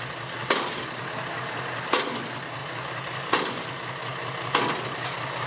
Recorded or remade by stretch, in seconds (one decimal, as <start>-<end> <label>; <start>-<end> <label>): 0.0-2.6 recorded; 2.6-3.5 remade; 3.5-5.5 recorded